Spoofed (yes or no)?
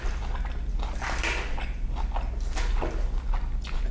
no